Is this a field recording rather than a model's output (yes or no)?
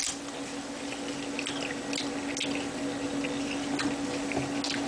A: yes